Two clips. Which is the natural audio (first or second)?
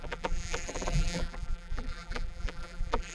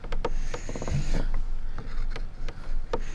second